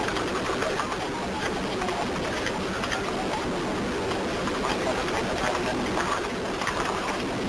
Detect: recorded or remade recorded